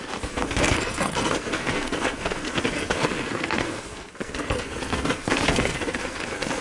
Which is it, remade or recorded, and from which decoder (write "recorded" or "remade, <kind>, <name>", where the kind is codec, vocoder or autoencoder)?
remade, codec, SNAC